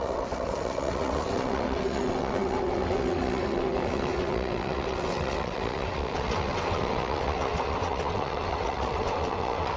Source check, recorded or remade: remade